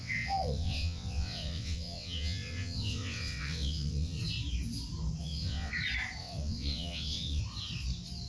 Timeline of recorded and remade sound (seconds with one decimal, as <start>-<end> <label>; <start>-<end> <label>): 0.0-4.2 remade; 4.2-5.2 recorded; 5.2-5.7 remade; 5.7-6.2 recorded; 6.2-7.4 remade; 7.4-8.3 recorded